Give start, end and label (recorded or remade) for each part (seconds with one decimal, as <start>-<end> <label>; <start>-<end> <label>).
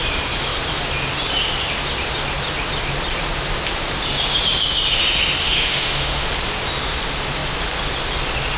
0.0-5.4 recorded; 5.4-6.3 remade; 6.3-8.6 recorded